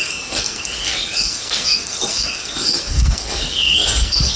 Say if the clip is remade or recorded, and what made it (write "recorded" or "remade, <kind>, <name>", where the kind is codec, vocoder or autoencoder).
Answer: remade, codec, SNAC